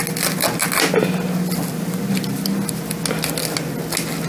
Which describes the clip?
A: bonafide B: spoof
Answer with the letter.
A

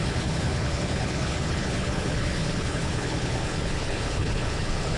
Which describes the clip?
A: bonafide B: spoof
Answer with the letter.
B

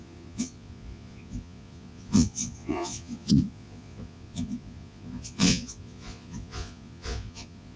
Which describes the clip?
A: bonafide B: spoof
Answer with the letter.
B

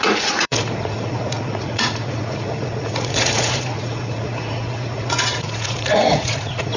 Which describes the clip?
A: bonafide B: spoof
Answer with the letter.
B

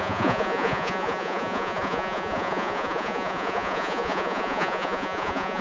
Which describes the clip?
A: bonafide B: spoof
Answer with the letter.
B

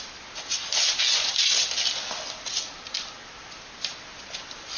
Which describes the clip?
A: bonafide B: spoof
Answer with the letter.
A